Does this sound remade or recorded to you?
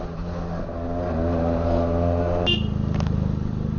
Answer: recorded